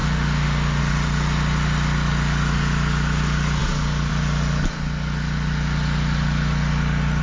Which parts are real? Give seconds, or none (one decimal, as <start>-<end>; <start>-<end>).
0.8-7.2